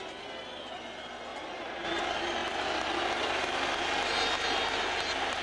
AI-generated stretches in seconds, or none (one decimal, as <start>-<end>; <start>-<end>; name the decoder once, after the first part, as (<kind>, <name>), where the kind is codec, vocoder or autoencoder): 1.3-2.0 (vocoder, BigVGAN v2)